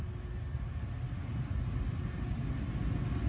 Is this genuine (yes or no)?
yes